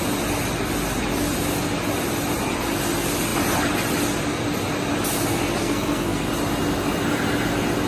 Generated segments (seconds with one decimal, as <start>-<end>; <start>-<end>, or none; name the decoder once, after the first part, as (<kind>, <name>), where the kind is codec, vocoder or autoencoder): 5.6-6.3 (codec, SNAC)